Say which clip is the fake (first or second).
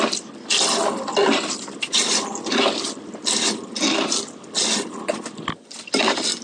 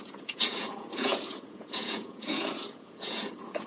second